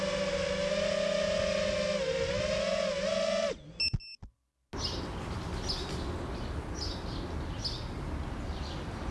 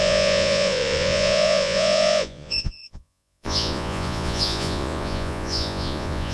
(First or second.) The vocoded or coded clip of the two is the second